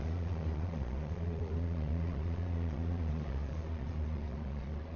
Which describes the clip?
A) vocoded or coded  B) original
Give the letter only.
A